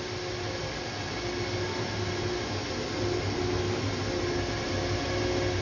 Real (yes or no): yes